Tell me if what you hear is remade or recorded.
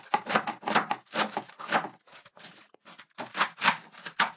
recorded